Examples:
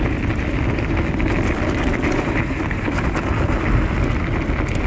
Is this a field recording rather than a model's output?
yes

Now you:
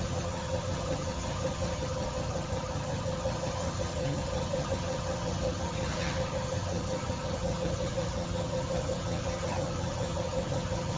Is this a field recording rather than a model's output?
no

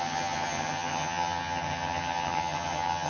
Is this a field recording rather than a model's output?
no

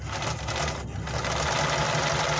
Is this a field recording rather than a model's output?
yes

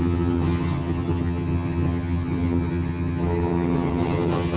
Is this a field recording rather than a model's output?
no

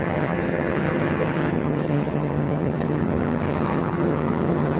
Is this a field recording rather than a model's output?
no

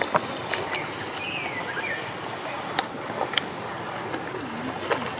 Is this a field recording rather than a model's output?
yes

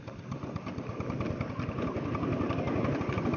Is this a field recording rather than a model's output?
yes